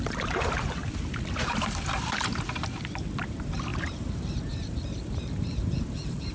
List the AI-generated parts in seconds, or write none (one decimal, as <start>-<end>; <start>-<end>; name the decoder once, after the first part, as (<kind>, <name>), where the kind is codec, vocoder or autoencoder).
0.0-0.8 (vocoder, BigVGAN v2); 3.3-6.3

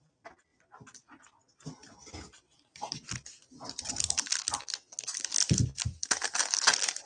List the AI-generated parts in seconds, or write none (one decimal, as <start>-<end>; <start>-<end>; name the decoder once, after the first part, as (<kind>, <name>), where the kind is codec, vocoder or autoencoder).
none

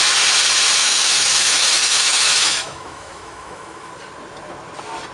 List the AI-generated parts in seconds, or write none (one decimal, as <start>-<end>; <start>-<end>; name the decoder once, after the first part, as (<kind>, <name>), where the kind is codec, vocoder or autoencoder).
0.8-3.9 (autoencoder, DAC-VAE)